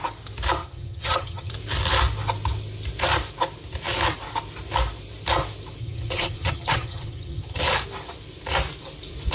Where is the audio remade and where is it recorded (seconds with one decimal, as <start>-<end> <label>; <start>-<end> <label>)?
0.0-0.6 recorded; 0.6-1.5 remade; 1.5-5.8 recorded; 5.8-7.6 remade; 7.6-9.3 recorded